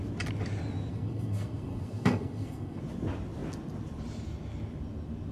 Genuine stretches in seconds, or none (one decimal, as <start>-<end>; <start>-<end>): 0.0-0.9; 2.8-5.3